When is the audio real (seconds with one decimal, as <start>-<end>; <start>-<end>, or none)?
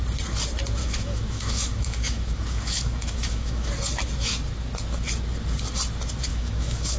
0.0-0.8; 3.7-6.3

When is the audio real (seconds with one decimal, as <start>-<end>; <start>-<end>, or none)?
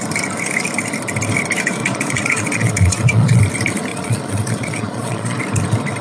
0.0-1.8; 3.4-3.9; 5.4-6.0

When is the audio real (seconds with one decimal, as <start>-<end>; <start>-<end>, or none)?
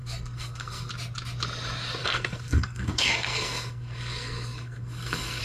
0.9-2.0